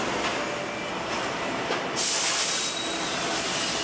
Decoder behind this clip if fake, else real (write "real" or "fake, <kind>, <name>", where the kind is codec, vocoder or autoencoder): real